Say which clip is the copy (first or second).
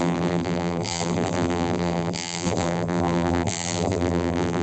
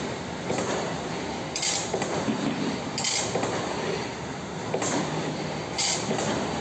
first